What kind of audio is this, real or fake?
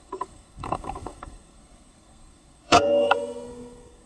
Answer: fake